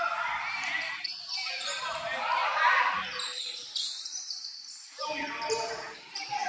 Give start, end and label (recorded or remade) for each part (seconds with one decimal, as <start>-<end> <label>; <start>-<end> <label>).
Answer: 0.0-6.5 recorded